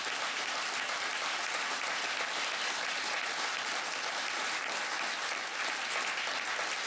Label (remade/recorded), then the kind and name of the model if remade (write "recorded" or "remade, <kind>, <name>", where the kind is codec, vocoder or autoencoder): recorded